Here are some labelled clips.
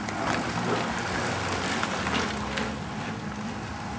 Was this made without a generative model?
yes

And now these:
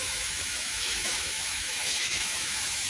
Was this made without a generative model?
no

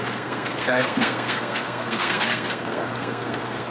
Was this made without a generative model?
no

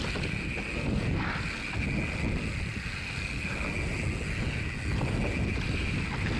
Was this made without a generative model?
yes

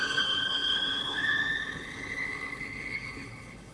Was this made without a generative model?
no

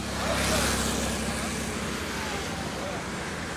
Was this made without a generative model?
yes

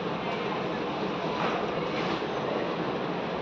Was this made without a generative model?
yes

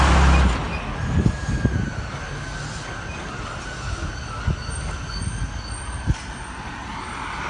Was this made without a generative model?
yes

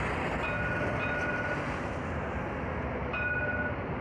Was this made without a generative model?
yes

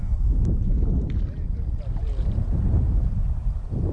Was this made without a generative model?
yes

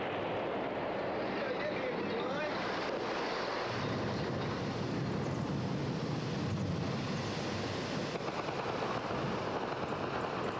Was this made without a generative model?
yes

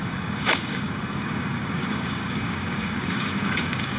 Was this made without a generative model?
no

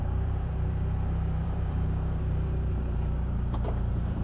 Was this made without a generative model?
no